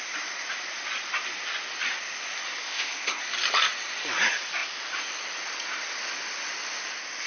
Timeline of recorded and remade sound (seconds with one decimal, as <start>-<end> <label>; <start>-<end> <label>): 0.0-2.6 recorded; 2.6-3.2 remade; 3.2-7.3 recorded